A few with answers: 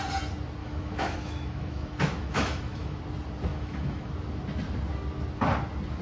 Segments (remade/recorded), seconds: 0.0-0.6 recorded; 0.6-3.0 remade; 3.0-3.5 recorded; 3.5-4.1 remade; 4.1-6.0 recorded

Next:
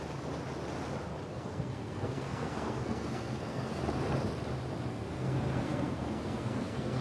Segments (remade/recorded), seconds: 0.0-1.3 recorded; 1.3-3.8 remade; 3.8-4.9 recorded; 4.9-7.0 remade

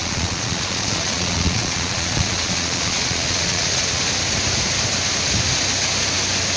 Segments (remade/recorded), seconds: 0.0-4.0 remade; 4.0-6.6 recorded